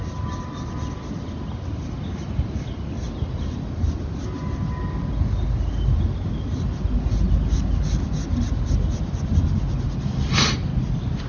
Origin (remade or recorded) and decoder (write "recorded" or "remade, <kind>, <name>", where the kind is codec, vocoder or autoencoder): recorded